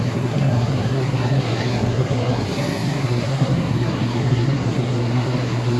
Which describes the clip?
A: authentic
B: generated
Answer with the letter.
B